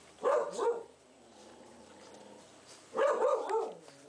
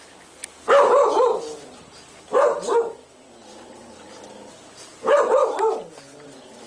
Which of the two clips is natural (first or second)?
second